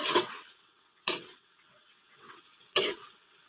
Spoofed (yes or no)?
yes